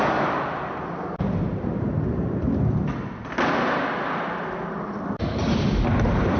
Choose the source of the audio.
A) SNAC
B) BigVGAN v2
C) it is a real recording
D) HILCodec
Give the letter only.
C